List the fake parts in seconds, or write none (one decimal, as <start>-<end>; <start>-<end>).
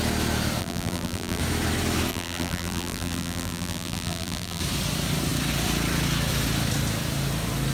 0.6-1.4; 2.1-4.6